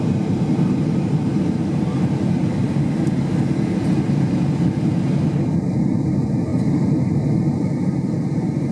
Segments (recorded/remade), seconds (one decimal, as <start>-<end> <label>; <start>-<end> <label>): 0.0-2.4 remade; 2.4-5.7 recorded; 5.7-8.7 remade